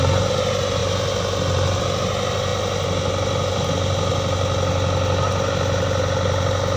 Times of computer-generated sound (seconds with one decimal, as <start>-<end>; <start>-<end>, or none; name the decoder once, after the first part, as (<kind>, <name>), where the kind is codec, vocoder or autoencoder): none